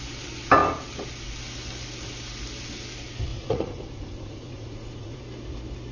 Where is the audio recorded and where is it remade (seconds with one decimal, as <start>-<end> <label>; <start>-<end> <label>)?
0.0-3.3 recorded; 3.3-5.2 remade; 5.2-5.9 recorded